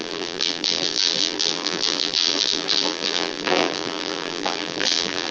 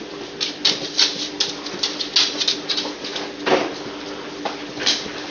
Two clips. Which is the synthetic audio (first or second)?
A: first